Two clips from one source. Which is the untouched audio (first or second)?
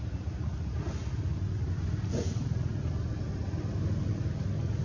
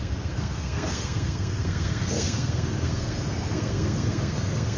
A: first